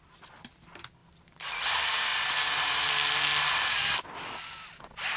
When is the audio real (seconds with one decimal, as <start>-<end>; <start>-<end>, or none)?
0.0-5.2